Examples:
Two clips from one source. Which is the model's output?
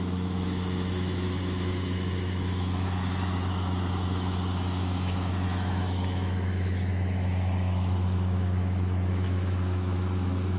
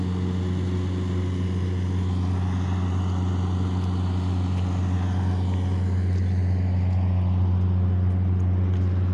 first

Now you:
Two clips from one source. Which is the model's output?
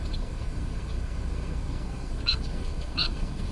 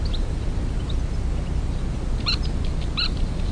first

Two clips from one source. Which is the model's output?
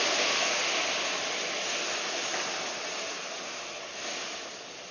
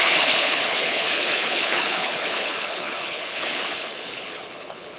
second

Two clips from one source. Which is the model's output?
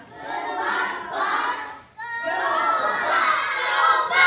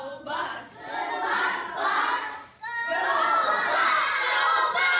second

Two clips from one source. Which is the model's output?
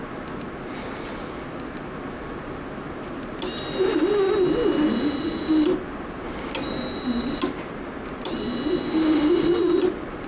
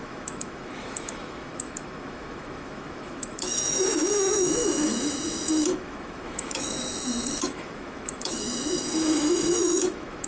second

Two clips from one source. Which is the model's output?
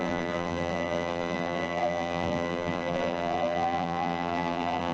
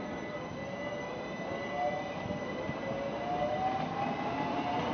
first